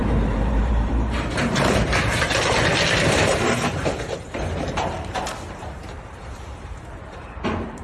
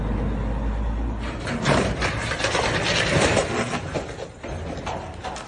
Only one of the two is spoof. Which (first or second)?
first